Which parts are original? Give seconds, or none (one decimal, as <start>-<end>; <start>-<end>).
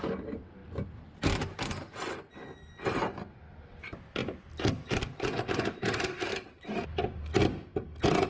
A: 0.6-2.9; 4.2-5.7; 7.7-8.3